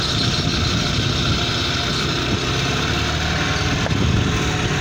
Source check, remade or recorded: recorded